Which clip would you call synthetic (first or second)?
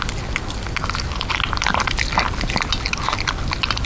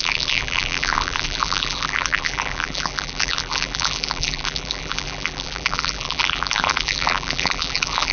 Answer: second